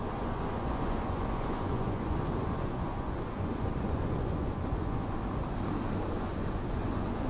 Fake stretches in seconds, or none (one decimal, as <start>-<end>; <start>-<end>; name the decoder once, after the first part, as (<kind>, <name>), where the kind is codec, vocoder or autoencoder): 0.0-5.2 (vocoder, Vocos); 6.1-7.3